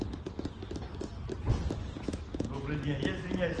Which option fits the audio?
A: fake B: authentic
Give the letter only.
B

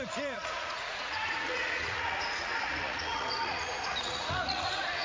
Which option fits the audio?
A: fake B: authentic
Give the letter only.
A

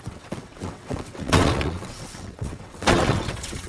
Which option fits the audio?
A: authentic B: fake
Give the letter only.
B